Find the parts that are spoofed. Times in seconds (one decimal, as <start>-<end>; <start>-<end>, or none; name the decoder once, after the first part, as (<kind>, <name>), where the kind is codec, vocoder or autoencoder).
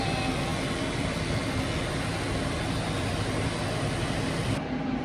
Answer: 0.5-3.5 (vocoder, BigVGAN v2)